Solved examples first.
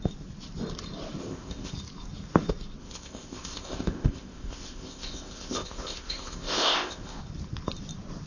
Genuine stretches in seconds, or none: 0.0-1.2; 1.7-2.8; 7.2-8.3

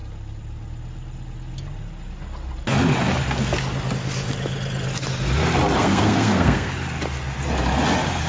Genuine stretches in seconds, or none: 0.0-5.8; 6.7-8.3

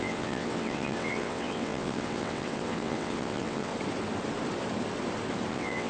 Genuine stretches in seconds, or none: 3.7-5.5

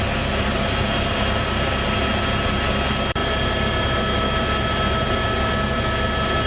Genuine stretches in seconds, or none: 0.0-6.5